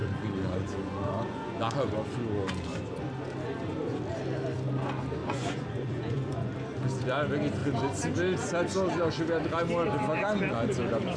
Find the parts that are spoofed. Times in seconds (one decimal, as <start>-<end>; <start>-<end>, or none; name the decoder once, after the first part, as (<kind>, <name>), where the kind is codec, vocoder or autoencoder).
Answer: 0.0-1.5 (vocoder, Vocos); 5.2-6.5